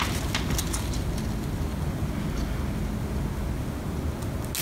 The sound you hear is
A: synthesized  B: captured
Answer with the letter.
B